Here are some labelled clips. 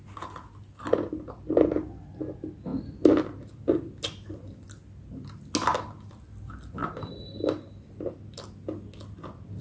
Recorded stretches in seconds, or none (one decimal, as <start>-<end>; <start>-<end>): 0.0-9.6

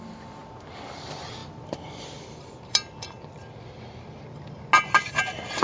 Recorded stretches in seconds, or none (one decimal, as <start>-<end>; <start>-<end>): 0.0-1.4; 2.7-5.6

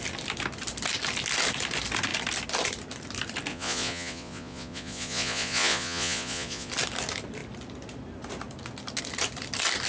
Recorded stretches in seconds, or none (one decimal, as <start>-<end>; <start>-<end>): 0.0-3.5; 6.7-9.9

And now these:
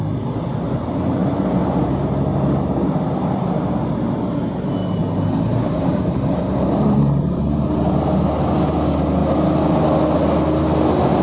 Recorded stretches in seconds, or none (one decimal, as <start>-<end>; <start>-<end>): 0.0-5.0; 7.9-11.2

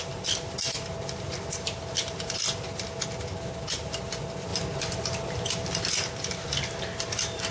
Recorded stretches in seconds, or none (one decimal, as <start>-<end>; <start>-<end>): 0.0-7.5

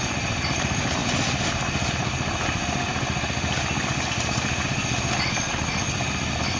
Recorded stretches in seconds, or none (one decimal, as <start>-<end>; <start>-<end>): 1.0-1.9; 2.9-5.3

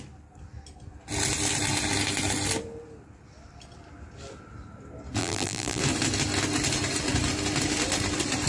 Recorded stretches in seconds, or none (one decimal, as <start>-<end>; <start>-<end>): 0.0-5.2; 5.8-8.5

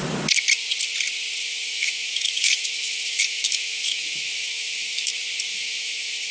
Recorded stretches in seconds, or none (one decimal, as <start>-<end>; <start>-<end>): 0.0-1.4; 5.1-5.5